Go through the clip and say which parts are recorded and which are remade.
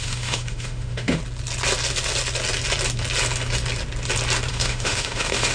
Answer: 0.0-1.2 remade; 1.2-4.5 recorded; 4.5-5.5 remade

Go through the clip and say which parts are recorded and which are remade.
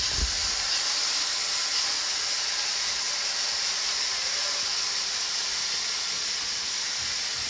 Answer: 0.0-1.7 recorded; 1.7-6.2 remade; 6.2-7.5 recorded